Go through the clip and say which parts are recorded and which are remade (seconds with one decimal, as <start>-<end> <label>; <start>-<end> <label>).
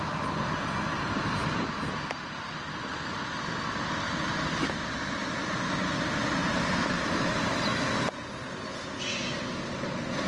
0.0-10.3 recorded